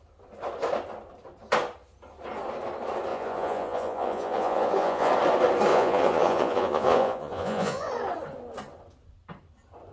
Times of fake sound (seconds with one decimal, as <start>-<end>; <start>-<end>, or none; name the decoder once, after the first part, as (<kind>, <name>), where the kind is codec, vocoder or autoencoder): 3.1-5.1 (vocoder, Vocos); 5.7-7.9